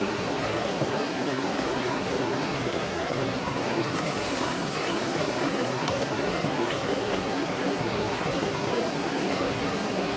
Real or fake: fake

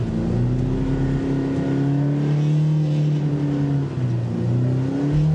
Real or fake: real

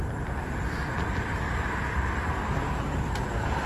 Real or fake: fake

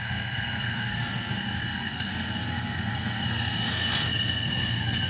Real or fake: fake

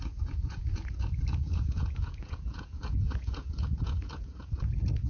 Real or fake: fake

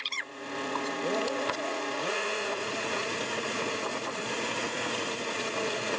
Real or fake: fake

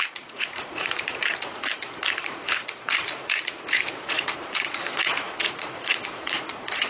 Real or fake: fake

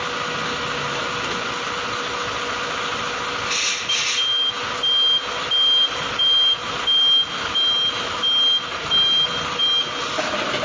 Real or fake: real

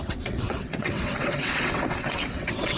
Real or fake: fake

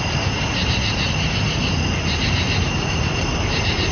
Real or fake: real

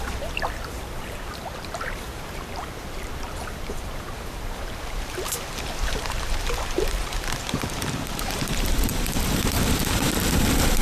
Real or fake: fake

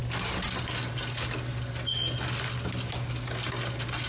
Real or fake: real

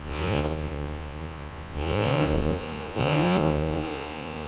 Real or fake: fake